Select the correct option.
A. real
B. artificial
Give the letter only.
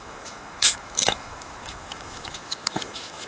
B